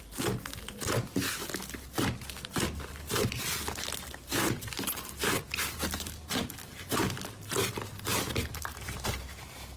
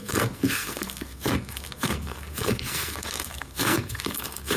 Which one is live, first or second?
first